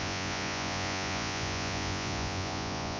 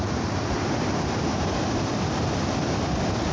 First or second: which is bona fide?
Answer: second